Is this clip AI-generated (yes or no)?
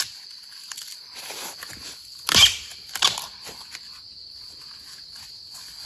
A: no